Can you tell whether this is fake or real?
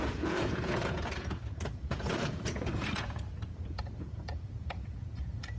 fake